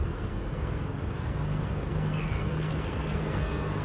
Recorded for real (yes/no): no